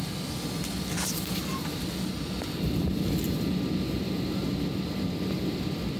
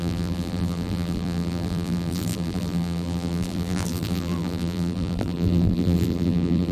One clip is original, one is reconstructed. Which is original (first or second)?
first